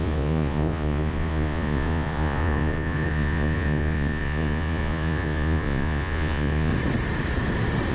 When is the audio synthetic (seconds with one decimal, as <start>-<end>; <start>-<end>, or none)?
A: 0.0-6.7